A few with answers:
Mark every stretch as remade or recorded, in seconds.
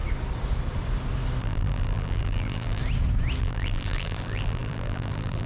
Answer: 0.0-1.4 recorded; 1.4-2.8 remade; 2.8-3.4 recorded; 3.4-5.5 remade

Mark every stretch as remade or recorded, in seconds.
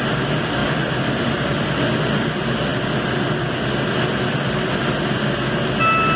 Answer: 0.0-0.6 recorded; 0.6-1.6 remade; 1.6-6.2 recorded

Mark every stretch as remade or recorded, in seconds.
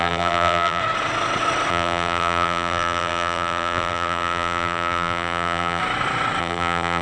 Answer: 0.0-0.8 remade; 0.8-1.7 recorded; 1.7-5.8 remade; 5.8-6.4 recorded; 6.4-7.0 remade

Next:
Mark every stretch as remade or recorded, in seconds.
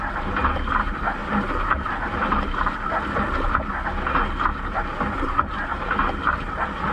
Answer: 0.0-1.2 recorded; 1.2-3.1 remade; 3.1-4.9 recorded; 4.9-6.0 remade; 6.0-6.9 recorded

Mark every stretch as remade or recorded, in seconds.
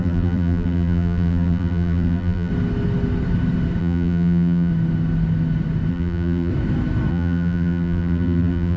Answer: 0.0-2.5 remade; 2.5-3.8 recorded; 3.8-4.7 remade; 4.7-5.9 recorded; 5.9-6.5 remade; 6.5-7.1 recorded; 7.1-8.8 remade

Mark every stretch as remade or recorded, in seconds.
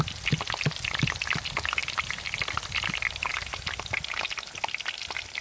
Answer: 0.0-5.4 recorded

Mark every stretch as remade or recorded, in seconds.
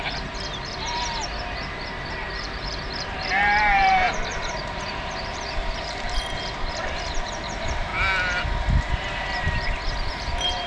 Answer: 0.0-7.9 remade; 7.9-8.9 recorded; 8.9-10.7 remade